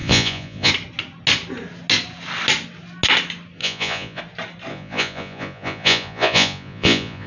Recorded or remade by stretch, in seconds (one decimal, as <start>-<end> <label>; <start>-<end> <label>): 0.0-0.7 remade; 0.7-3.6 recorded; 3.6-4.2 remade; 4.2-4.7 recorded; 4.7-7.3 remade